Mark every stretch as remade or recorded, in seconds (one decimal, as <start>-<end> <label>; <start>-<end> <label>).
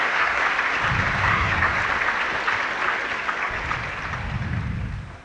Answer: 0.0-0.4 remade; 0.4-1.2 recorded; 1.2-1.8 remade; 1.8-5.2 recorded